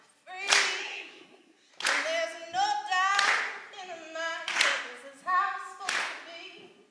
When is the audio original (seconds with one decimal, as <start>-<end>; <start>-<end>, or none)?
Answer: 0.0-0.8; 1.7-6.9